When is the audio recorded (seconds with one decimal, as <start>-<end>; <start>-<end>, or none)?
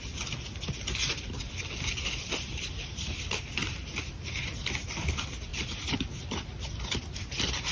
0.0-2.9; 3.9-5.5; 6.6-7.7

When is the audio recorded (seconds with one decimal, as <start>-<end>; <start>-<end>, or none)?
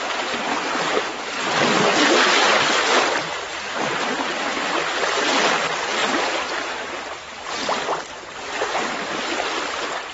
0.0-6.0; 7.5-10.1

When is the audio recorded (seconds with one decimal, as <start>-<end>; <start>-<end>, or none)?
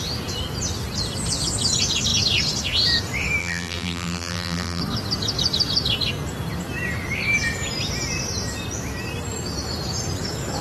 0.0-3.4; 4.8-10.6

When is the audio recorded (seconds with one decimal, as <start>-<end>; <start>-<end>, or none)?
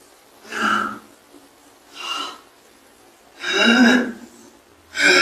0.0-1.4; 4.3-5.2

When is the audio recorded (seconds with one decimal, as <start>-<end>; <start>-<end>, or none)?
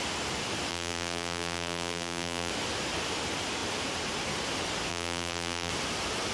0.0-0.7; 2.5-4.9; 5.7-6.3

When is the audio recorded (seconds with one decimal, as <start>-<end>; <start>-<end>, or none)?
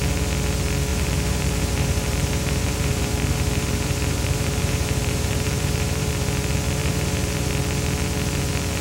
0.0-0.9; 6.1-6.8; 7.5-8.8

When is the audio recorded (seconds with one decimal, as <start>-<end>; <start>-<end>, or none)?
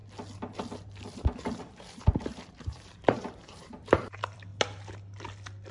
0.0-1.6; 4.5-5.7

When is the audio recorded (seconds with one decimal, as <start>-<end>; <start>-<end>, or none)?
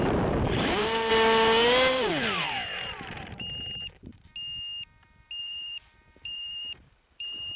1.1-1.9; 4.1-5.4